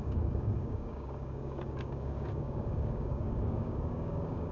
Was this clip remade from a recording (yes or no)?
yes